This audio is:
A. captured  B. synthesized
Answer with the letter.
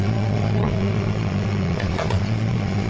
B